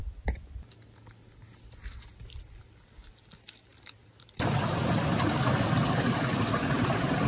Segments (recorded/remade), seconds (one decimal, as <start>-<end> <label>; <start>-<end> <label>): 0.0-0.7 remade; 0.7-2.1 recorded; 2.1-2.6 remade; 2.6-3.7 recorded; 3.7-5.1 remade; 5.1-7.3 recorded